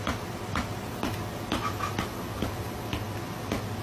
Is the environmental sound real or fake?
real